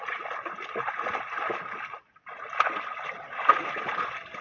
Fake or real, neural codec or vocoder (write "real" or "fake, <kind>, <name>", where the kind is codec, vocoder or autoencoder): real